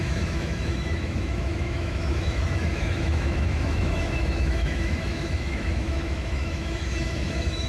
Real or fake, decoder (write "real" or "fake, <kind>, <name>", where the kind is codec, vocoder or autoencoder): fake, autoencoder, DAC-VAE